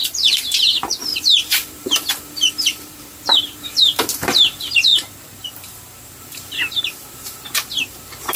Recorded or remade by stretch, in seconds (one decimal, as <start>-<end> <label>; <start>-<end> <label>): 0.0-4.9 remade; 4.9-6.2 recorded; 6.2-8.4 remade